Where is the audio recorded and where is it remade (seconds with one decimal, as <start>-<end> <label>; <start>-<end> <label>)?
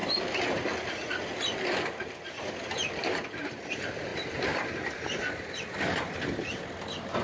0.0-7.2 recorded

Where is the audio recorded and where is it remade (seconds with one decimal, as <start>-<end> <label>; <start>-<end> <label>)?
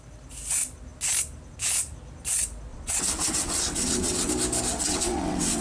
0.0-2.7 recorded; 2.7-4.3 remade; 4.3-4.7 recorded; 4.7-5.6 remade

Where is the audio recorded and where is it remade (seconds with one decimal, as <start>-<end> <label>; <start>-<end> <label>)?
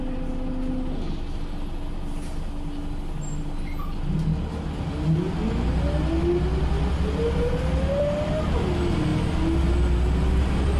0.0-10.8 recorded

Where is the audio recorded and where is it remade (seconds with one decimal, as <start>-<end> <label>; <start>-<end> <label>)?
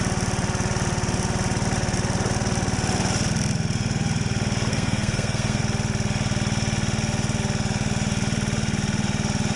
0.0-4.7 recorded; 4.7-5.6 remade; 5.6-9.6 recorded